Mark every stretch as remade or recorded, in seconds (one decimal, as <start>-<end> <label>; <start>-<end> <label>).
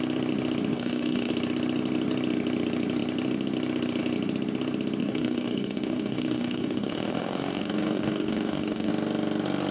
0.0-0.7 recorded; 0.7-1.3 remade; 1.3-5.0 recorded; 5.0-8.9 remade; 8.9-9.7 recorded